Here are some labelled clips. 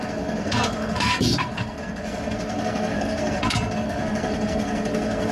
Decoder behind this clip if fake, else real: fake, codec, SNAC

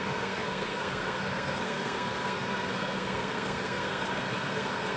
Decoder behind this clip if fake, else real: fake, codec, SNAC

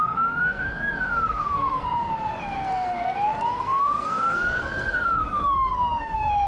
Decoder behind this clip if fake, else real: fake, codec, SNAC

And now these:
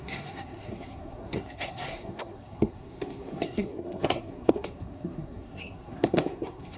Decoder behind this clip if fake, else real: fake, codec, SNAC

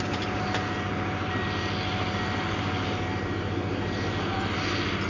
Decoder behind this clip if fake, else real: real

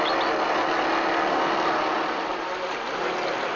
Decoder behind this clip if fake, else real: real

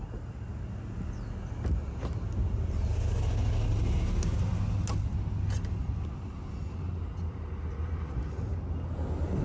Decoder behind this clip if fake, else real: real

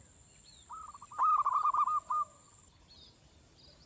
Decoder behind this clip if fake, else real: real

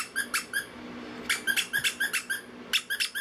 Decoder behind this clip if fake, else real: real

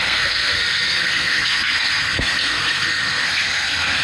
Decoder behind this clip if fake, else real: fake, codec, SNAC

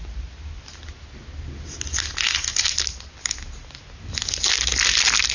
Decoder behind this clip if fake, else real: real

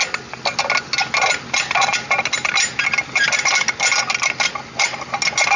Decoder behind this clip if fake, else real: real